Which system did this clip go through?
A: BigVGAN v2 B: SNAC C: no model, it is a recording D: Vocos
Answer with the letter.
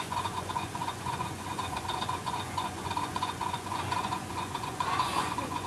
D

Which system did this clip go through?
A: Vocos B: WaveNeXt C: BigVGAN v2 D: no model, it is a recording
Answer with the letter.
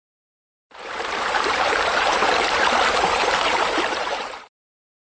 C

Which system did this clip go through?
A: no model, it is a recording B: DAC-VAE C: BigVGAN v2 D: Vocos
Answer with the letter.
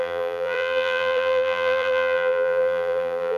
C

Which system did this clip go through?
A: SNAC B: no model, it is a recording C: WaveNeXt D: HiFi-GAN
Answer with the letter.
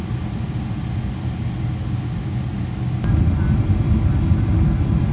B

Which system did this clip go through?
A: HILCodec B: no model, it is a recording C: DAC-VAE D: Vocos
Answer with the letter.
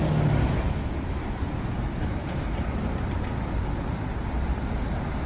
B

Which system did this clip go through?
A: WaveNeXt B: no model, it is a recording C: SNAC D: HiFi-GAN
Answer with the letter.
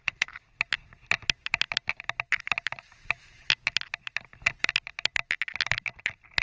B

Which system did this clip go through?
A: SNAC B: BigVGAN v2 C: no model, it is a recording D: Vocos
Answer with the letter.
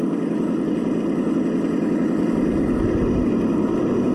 C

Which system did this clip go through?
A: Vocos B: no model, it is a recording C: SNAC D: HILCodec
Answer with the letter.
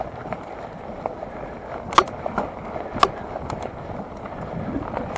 B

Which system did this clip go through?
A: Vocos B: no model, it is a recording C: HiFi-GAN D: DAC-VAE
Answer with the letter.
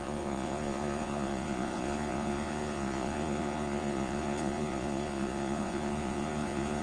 A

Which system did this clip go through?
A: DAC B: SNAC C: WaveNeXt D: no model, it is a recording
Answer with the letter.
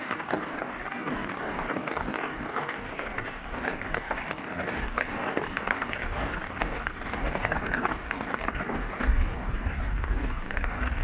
A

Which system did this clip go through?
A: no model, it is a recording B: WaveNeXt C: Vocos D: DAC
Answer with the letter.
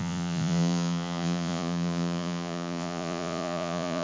C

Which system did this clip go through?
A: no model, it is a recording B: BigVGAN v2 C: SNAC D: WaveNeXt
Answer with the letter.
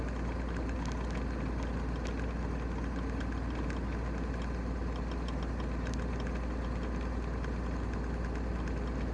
A